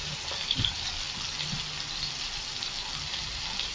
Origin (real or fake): real